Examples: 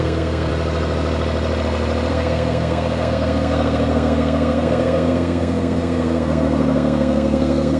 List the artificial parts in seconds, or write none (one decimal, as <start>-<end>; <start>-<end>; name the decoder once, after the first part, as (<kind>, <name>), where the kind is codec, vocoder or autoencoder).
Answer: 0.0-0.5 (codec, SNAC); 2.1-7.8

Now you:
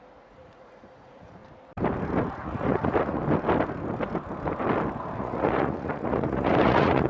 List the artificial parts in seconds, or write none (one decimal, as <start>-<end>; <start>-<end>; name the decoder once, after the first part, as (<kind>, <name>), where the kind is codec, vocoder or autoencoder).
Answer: 0.0-1.4 (vocoder, Vocos); 2.3-3.2; 5.2-7.1

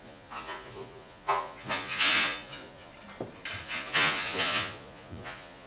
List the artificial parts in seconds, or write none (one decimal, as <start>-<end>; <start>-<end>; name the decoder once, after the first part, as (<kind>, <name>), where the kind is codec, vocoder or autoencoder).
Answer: 0.0-2.9 (vocoder, Vocos); 3.6-5.7

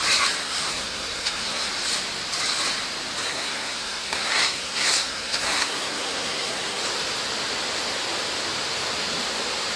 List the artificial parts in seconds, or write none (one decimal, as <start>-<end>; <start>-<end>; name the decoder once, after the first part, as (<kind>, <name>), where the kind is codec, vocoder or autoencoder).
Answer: 0.4-1.7 (codec, SNAC); 3.2-6.8